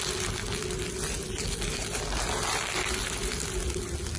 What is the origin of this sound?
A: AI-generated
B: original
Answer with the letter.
B